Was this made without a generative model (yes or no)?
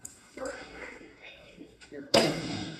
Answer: no